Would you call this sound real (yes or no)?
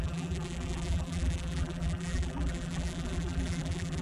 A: no